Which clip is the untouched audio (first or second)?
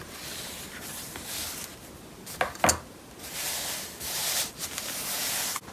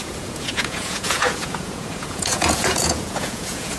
first